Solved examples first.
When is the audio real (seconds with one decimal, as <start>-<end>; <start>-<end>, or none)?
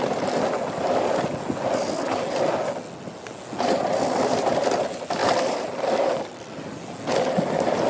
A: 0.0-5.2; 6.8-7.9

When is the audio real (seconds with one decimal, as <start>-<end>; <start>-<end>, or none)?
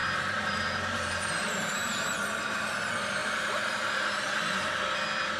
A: 2.6-3.2; 4.8-5.4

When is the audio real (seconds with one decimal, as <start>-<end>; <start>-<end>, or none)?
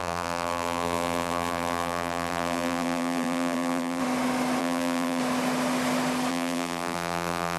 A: 4.0-4.6; 5.2-6.3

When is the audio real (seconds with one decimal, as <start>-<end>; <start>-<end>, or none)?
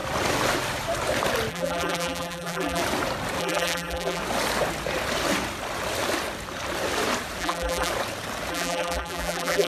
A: 0.0-1.5; 2.8-3.4; 4.2-7.4; 7.9-8.5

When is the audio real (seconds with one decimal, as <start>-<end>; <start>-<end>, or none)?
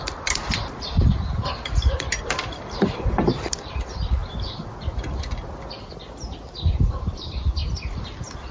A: 4.2-6.9; 7.6-8.5